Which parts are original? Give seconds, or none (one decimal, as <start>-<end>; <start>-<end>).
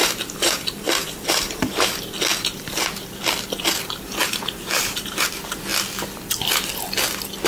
1.9-4.2; 5.3-7.5